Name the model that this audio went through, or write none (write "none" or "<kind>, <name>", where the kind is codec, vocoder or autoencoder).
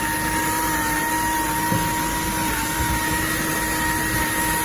none